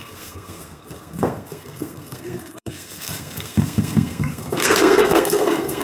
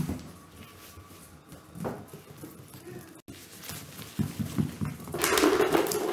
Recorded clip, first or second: second